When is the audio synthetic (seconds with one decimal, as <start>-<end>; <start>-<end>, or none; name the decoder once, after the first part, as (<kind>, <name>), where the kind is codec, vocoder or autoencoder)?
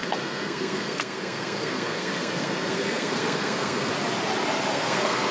0.0-3.9 (codec, SNAC); 4.7-5.3